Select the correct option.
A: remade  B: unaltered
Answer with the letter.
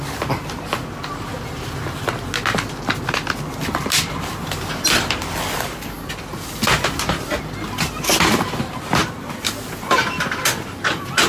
B